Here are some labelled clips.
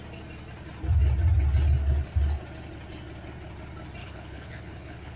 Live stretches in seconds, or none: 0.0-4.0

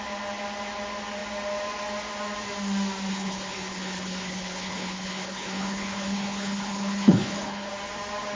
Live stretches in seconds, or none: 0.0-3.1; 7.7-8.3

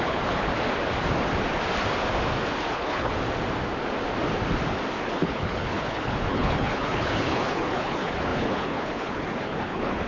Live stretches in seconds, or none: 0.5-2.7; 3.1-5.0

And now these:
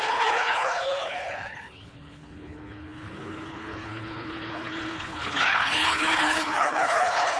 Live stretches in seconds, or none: none

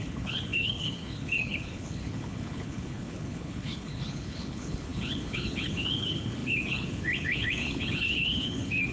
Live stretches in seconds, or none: none

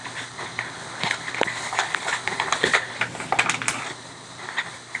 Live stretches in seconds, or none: 3.0-3.8